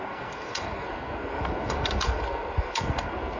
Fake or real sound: fake